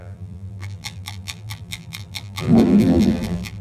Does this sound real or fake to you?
fake